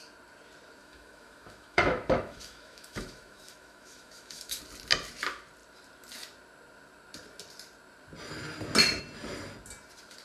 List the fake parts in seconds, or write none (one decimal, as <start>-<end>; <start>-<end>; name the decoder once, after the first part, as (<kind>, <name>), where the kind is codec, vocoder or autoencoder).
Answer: 0.8-4.6 (autoencoder, DAC-VAE)